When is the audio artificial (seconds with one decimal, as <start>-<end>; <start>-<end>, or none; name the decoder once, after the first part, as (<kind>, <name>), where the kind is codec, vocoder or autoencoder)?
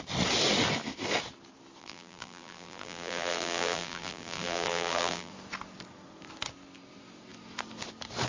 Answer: 1.8-5.3 (vocoder, BigVGAN v2)